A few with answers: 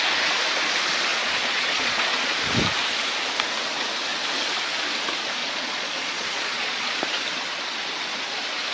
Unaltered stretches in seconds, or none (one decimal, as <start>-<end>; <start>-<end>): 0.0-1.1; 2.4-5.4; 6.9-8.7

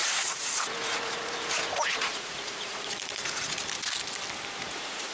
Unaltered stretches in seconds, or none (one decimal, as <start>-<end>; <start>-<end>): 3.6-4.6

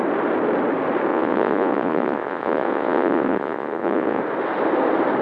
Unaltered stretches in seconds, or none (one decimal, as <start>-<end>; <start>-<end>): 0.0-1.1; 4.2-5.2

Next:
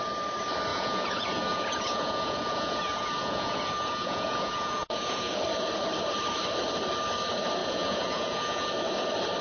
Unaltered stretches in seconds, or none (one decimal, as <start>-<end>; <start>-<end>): 0.0-0.7; 5.4-7.6; 8.7-9.4

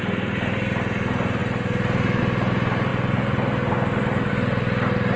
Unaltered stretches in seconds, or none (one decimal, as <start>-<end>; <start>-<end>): 0.0-5.2

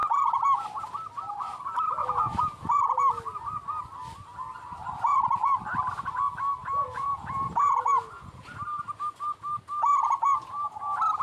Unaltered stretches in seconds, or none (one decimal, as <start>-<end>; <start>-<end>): 0.0-2.0; 2.7-6.6; 8.5-11.2

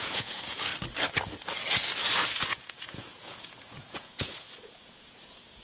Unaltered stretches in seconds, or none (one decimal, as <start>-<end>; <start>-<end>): 0.7-2.3

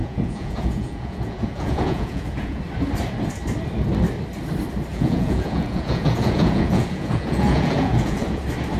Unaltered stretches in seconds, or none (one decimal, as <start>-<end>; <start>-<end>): 2.6-4.9; 8.4-8.8